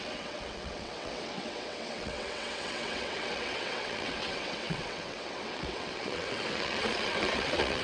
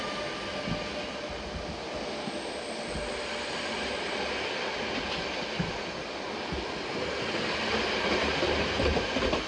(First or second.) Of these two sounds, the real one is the second